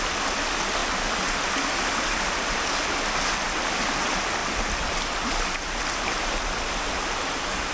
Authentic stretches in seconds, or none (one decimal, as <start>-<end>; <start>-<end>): 0.0-7.7